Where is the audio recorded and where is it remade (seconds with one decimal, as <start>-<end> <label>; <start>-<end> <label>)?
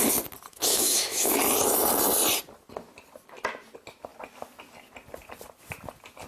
0.0-0.5 recorded; 0.5-1.4 remade; 1.4-6.3 recorded